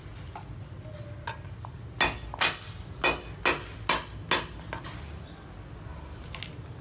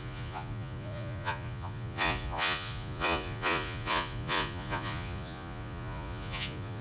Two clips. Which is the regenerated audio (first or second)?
second